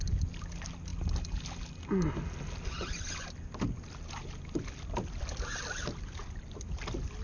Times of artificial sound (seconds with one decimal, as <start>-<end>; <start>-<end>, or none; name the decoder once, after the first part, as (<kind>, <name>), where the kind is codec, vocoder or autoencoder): none